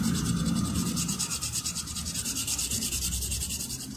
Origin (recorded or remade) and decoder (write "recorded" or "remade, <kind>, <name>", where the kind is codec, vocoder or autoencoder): recorded